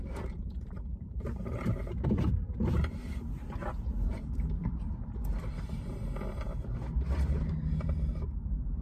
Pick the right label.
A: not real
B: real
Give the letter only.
A